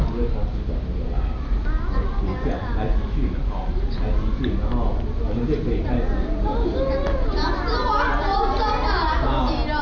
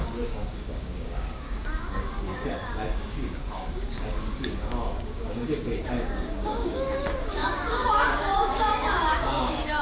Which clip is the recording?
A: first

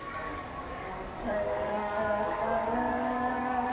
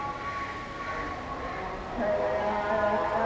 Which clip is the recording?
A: second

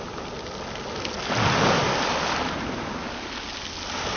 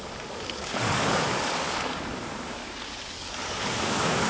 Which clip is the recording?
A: first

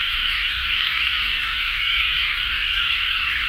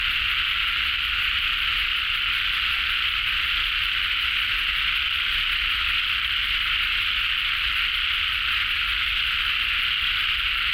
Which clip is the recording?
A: second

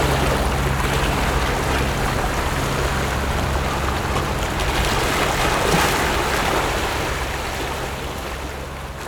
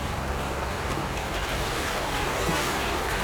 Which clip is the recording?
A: first